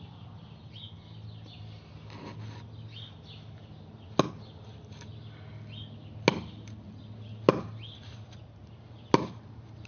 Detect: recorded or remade recorded